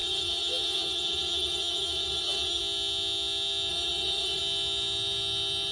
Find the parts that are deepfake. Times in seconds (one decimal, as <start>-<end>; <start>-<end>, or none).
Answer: 0.0-2.6; 3.7-4.4